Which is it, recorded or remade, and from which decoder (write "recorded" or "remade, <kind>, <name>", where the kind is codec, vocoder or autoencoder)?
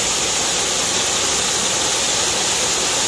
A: recorded